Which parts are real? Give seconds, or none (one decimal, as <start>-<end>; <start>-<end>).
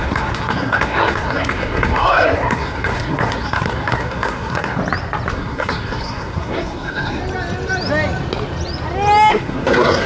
4.8-5.3; 7.2-9.3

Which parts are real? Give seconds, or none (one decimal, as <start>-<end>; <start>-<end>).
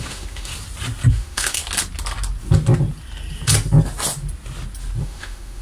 0.5-1.1; 1.6-5.0